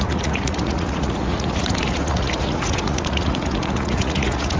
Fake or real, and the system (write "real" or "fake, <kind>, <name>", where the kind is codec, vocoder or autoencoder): fake, vocoder, Vocos